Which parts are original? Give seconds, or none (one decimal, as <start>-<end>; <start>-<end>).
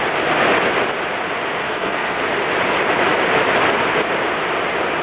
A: 0.0-1.6; 2.2-5.0